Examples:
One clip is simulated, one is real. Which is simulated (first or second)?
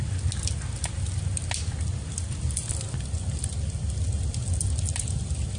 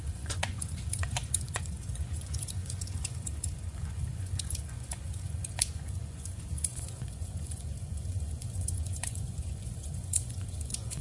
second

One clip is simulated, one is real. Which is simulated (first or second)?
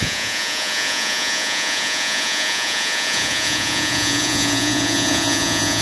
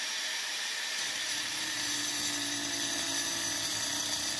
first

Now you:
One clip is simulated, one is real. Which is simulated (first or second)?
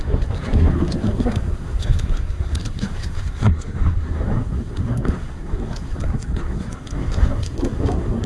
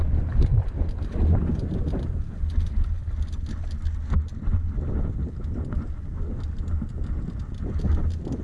first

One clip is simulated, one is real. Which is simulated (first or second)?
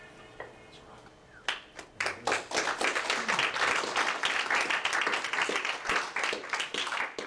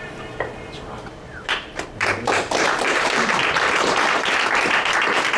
second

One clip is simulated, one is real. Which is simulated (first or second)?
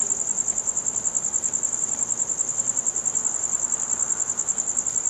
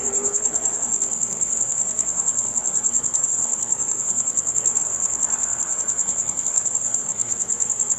second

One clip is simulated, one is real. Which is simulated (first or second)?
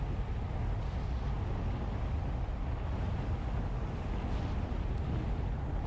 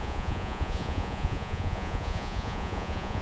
second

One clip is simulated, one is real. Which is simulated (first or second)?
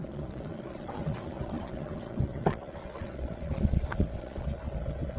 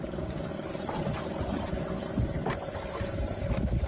first